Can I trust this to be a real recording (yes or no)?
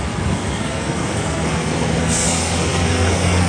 no